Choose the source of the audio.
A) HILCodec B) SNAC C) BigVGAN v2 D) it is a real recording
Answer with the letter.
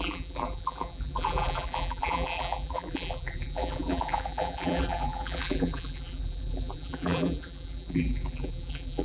C